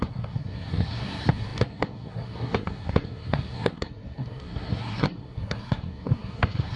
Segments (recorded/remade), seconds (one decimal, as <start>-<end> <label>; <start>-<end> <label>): 0.0-6.8 remade